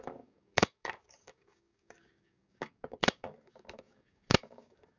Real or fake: fake